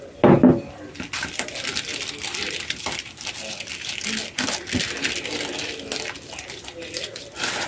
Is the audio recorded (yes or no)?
yes